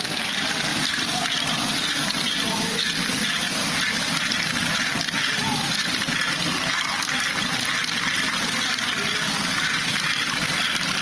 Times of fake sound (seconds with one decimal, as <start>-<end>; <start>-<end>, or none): 0.7-2.6; 4.6-6.1